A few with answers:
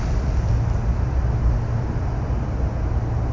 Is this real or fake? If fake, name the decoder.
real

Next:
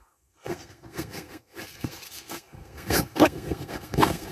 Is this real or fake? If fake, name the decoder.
fake, codec, SNAC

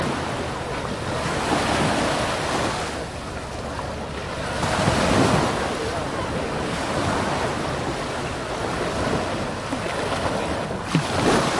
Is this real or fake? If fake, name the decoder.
real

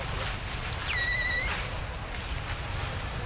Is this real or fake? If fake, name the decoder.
real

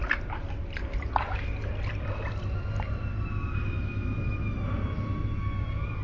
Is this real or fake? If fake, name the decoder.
real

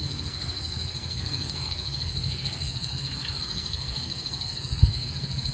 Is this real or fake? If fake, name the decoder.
fake, codec, SNAC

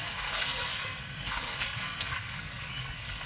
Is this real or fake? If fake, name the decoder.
fake, codec, SNAC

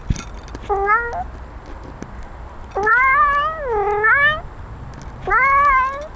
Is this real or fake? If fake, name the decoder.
real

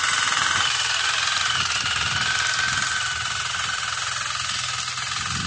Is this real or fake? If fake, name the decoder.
real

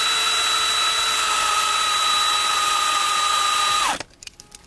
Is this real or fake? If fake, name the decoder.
real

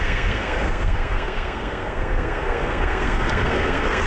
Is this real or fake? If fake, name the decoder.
fake, codec, SNAC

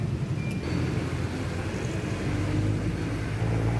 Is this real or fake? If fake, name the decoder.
real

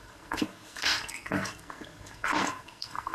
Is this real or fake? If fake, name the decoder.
fake, codec, SNAC